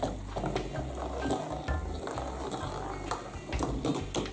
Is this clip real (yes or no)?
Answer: yes